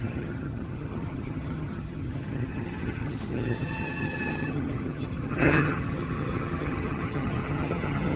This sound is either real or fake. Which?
fake